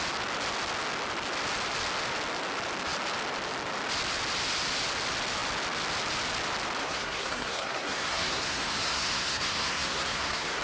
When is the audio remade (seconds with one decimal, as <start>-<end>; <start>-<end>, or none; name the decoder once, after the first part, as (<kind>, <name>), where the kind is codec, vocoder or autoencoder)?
6.8-10.6 (codec, SNAC)